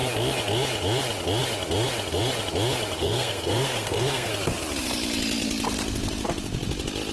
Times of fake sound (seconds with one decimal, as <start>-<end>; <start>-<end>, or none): 3.0-4.3